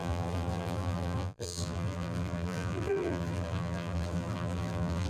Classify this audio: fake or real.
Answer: fake